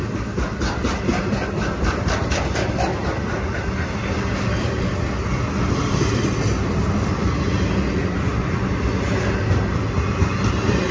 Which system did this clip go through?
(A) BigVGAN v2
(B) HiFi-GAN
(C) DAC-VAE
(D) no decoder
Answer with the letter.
D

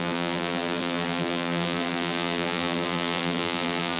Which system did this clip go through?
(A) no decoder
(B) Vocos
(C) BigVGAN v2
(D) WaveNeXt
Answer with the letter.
C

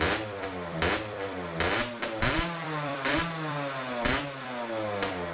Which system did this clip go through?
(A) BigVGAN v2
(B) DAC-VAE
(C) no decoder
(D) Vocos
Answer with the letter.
A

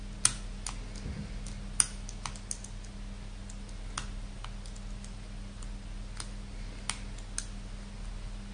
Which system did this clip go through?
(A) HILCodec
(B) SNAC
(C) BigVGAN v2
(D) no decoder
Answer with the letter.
D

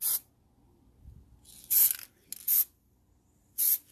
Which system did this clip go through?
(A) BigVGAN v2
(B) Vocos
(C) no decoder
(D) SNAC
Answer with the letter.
C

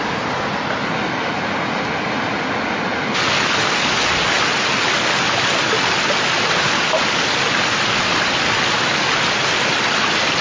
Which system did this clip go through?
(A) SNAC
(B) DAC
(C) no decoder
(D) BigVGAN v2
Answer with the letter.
C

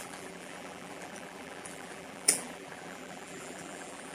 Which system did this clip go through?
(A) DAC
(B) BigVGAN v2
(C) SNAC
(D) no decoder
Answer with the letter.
B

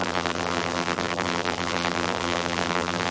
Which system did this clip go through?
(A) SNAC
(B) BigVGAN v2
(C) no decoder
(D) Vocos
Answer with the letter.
B